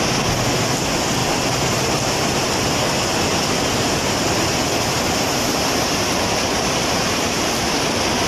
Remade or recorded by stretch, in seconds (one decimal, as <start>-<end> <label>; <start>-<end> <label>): 0.0-1.2 recorded; 1.2-3.3 remade; 3.3-8.3 recorded